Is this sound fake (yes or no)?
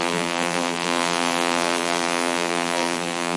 yes